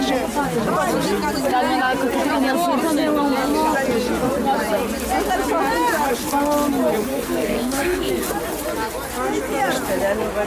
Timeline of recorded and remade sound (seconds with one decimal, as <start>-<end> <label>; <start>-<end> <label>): 0.0-7.1 recorded; 7.1-8.1 remade; 8.1-10.5 recorded